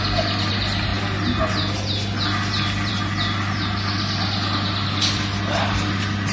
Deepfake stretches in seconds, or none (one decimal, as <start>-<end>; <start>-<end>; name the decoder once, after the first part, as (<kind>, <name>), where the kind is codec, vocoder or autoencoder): none